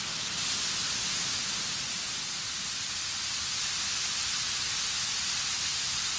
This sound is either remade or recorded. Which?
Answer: recorded